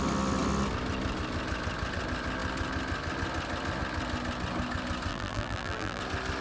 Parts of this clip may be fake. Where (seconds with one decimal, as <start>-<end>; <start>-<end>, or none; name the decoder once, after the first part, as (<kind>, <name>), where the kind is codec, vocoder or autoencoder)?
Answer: 5.1-6.0 (vocoder, BigVGAN v2)